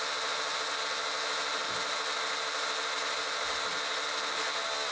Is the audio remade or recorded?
recorded